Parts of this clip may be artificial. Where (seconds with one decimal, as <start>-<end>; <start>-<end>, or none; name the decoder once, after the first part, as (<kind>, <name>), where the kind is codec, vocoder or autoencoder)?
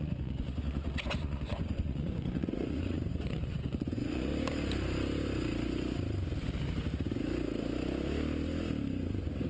0.0-4.3 (vocoder, Vocos); 9.1-9.5